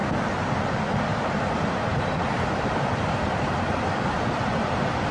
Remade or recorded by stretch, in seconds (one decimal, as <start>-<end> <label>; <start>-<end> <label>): 0.0-1.1 recorded; 1.1-4.2 remade; 4.2-5.1 recorded